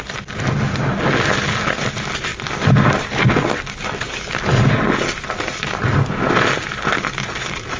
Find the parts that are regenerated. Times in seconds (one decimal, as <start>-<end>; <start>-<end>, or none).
none